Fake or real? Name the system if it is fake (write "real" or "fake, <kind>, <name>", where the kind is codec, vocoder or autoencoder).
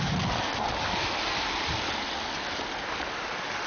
real